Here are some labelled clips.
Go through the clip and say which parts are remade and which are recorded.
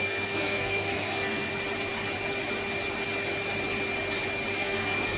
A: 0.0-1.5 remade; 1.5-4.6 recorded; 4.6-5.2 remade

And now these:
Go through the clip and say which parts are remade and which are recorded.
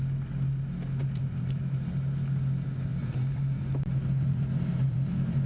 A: 0.0-1.0 recorded; 1.0-1.6 remade; 1.6-2.9 recorded; 2.9-5.5 remade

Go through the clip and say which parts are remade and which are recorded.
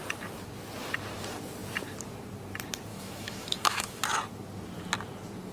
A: 0.0-2.9 recorded; 2.9-4.0 remade; 4.0-5.5 recorded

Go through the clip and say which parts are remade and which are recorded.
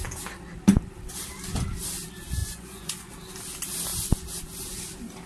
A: 0.0-2.4 recorded; 2.4-3.1 remade; 3.1-5.3 recorded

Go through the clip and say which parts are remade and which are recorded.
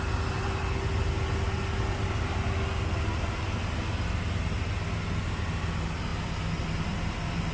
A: 0.0-7.5 recorded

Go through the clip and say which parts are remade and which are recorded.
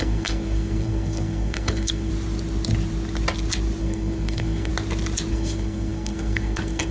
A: 0.0-2.1 remade; 2.1-3.8 recorded; 3.8-4.7 remade; 4.7-5.3 recorded; 5.3-6.9 remade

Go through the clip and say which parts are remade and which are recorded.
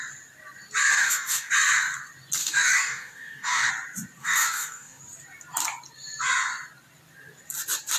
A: 0.0-0.9 recorded; 0.9-1.5 remade; 1.5-2.4 recorded; 2.4-3.7 remade; 3.7-4.2 recorded; 4.2-5.0 remade; 5.0-8.0 recorded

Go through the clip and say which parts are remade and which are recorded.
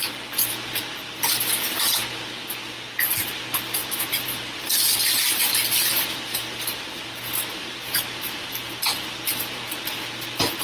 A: 0.0-3.8 recorded; 3.8-8.8 remade; 8.8-10.6 recorded